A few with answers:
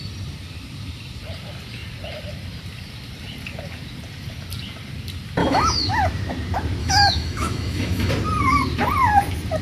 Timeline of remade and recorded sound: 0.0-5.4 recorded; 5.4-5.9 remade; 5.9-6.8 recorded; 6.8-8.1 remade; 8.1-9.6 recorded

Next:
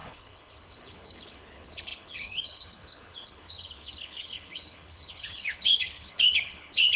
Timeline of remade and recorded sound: 0.0-7.0 remade